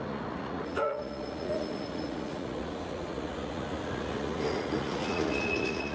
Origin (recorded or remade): remade